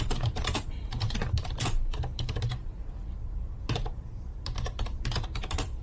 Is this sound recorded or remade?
remade